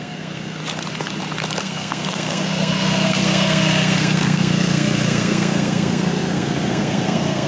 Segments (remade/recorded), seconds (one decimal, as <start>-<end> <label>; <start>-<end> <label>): 0.0-0.6 remade; 0.6-1.6 recorded; 1.6-7.5 remade